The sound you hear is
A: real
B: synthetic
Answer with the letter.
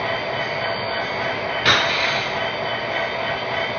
A